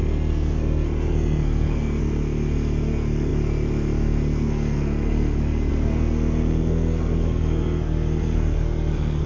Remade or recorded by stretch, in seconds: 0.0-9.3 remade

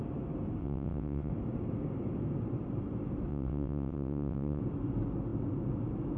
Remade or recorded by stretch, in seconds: 0.0-0.6 recorded; 0.6-1.3 remade; 1.3-3.3 recorded; 3.3-4.6 remade; 4.6-6.2 recorded

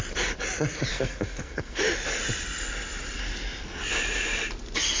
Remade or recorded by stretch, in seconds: 0.0-0.9 recorded; 0.9-1.8 remade; 1.8-5.0 recorded

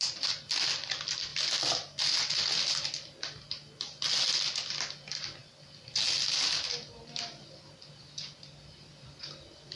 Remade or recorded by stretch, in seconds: 0.0-9.8 recorded